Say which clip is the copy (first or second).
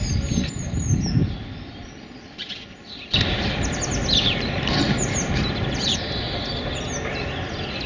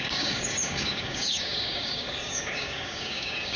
second